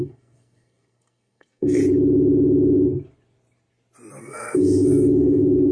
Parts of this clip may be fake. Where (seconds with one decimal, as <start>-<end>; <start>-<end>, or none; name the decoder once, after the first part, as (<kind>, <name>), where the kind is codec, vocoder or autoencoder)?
0.0-1.8 (codec, SNAC); 4.2-5.7